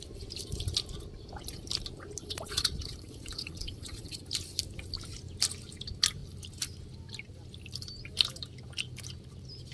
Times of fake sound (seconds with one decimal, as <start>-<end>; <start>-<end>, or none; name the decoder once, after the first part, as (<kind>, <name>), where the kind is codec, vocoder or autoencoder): 2.2-4.2 (vocoder, Vocos)